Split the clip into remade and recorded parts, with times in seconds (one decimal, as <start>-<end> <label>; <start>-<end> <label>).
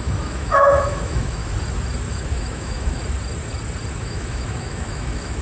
0.0-1.4 remade; 1.4-2.1 recorded; 2.1-3.0 remade; 3.0-4.0 recorded; 4.0-5.4 remade